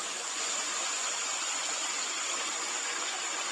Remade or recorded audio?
remade